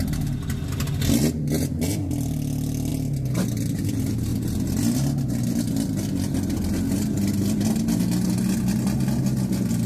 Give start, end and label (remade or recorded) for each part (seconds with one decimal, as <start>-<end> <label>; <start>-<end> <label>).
0.0-9.9 recorded